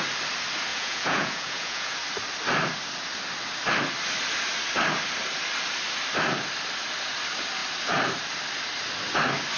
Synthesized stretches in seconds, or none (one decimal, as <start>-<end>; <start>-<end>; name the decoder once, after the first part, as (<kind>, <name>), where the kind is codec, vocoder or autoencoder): 0.7-2.0 (vocoder, Vocos)